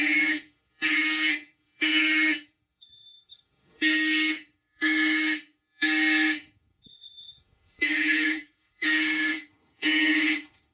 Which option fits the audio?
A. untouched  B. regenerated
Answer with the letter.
B